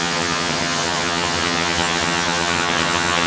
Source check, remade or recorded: remade